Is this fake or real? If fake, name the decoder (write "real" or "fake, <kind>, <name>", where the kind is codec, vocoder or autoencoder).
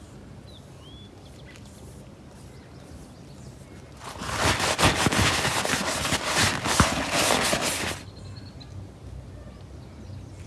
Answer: real